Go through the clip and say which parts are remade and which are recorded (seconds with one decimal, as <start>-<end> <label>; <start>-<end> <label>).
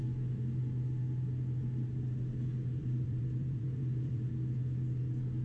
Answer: 0.0-2.8 recorded; 2.8-4.3 remade; 4.3-5.4 recorded